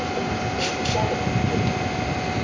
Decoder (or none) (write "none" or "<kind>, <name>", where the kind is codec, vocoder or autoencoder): none